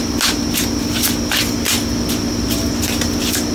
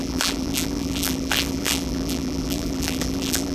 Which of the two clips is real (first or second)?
first